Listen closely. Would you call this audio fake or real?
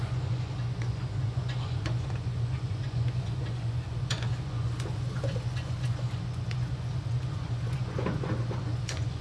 fake